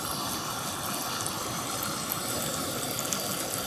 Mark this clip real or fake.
real